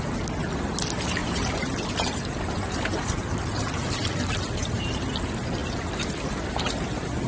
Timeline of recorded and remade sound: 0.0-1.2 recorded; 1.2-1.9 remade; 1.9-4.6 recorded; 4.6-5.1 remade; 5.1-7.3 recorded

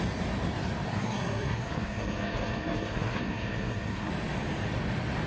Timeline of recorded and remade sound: 0.0-0.9 recorded; 0.9-4.1 remade; 4.1-5.3 recorded

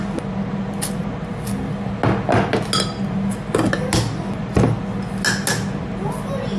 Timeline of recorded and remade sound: 0.0-6.6 recorded

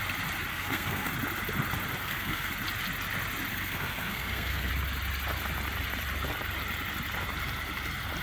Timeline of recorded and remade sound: 0.0-0.5 recorded; 0.5-1.1 remade; 1.1-2.0 recorded; 2.0-2.5 remade; 2.5-3.5 recorded; 3.5-4.7 remade; 4.7-8.2 recorded

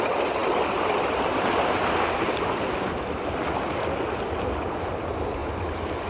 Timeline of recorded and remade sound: 0.0-6.1 recorded

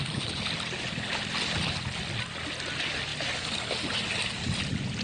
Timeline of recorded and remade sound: 0.0-5.0 recorded